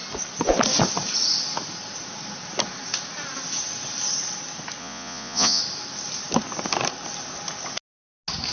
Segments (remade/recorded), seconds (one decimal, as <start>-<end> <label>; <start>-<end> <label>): 0.0-4.8 recorded; 4.8-5.6 remade; 5.6-8.5 recorded